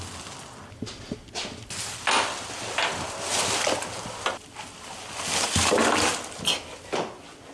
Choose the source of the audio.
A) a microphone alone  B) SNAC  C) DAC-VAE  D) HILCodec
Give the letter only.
A